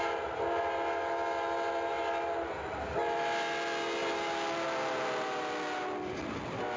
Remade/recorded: recorded